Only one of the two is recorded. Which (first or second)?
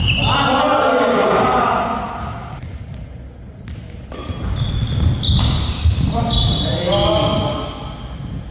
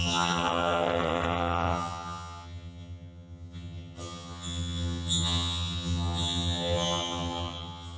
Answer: first